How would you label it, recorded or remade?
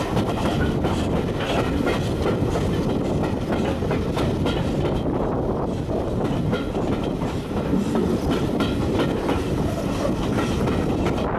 recorded